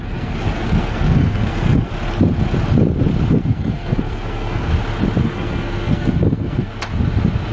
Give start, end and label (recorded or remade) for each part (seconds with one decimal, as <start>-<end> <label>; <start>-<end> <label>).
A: 0.0-1.9 remade; 1.9-3.3 recorded; 3.3-4.7 remade; 4.7-5.2 recorded; 5.2-6.7 remade; 6.7-7.5 recorded